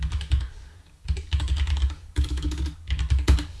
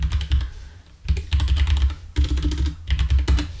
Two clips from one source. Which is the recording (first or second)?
second